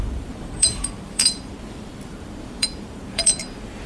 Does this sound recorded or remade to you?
remade